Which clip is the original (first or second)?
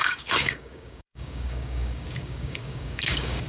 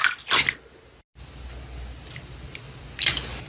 second